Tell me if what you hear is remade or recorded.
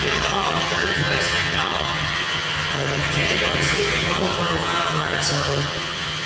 remade